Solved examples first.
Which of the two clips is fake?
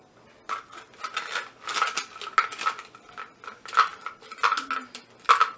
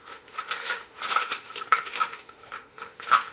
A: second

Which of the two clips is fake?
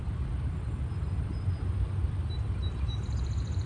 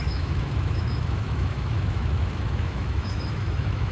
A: second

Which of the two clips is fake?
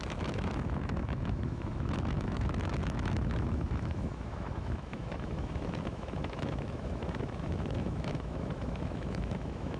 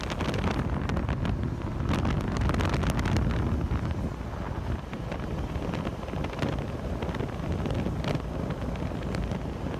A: first